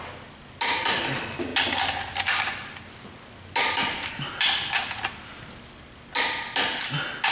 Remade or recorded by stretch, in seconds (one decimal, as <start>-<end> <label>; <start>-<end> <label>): 0.0-7.3 recorded